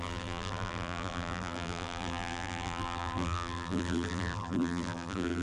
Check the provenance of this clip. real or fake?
fake